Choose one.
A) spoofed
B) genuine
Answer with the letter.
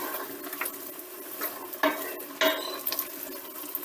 B